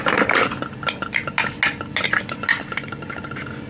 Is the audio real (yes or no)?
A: yes